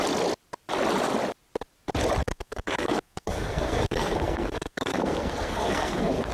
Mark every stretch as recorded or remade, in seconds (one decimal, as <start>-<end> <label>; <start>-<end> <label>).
0.0-2.2 recorded; 2.2-6.3 remade